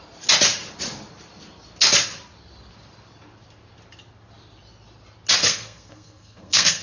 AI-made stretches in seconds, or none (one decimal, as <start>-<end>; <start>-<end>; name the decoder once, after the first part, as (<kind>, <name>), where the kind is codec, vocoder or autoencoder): 5.4-6.8 (codec, SNAC)

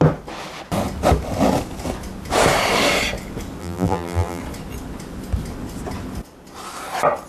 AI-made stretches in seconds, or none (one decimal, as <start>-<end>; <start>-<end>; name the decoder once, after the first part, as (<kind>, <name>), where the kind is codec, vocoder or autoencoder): 3.6-4.4 (vocoder, BigVGAN v2)